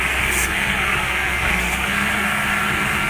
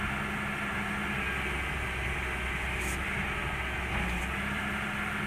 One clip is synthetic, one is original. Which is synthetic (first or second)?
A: first